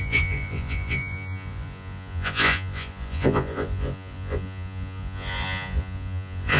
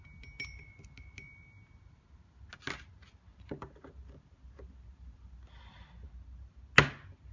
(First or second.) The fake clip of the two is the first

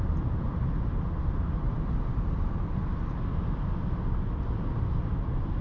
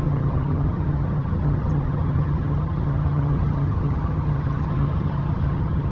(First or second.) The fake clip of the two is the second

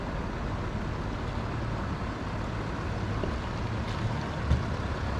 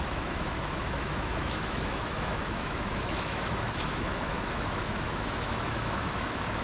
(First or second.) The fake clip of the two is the second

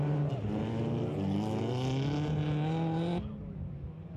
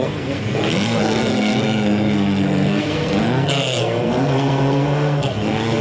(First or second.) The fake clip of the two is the second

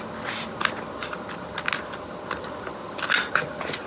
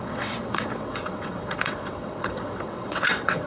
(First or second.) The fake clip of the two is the second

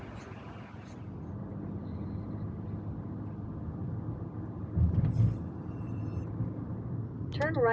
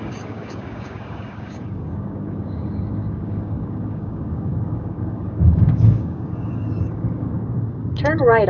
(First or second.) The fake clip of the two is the second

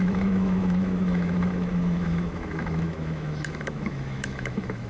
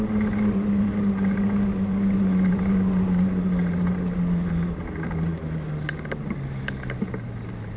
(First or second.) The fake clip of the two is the first